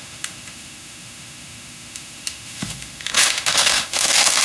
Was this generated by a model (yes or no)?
yes